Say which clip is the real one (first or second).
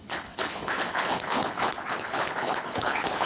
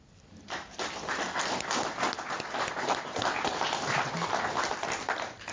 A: second